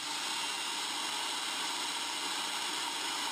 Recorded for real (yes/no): yes